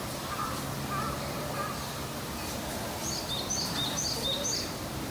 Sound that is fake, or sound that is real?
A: fake